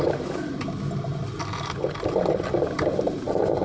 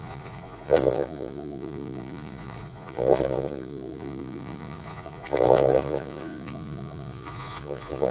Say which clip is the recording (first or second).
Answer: first